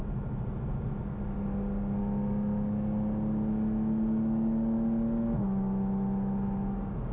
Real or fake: real